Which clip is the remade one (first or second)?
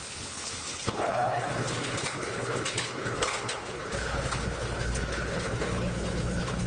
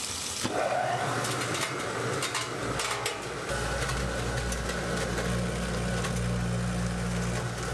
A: first